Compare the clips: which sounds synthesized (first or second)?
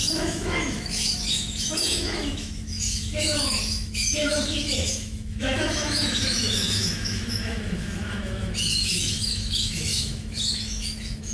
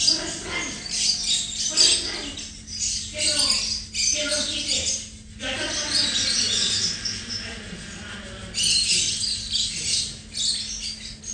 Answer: first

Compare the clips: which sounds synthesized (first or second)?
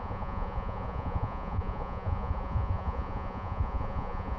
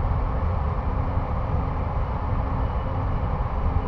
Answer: first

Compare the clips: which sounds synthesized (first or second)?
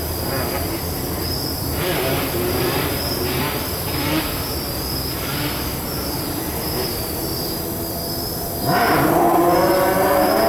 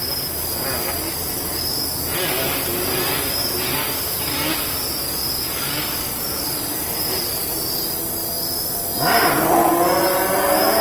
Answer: first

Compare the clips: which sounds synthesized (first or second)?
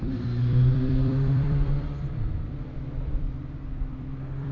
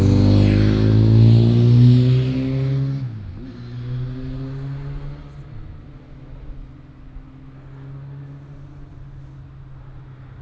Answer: first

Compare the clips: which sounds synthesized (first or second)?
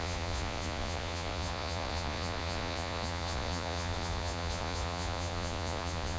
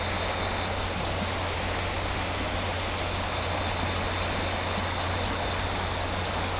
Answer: first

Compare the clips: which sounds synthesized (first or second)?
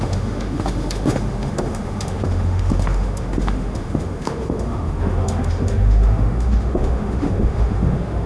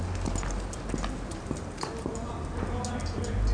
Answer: first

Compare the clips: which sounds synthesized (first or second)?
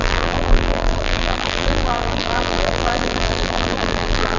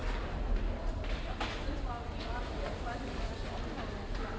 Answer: first